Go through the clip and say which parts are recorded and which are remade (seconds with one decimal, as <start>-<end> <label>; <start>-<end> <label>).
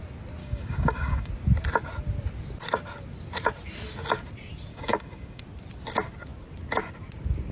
0.0-0.4 recorded; 0.4-1.3 remade; 1.3-4.7 recorded; 4.7-5.4 remade; 5.4-7.5 recorded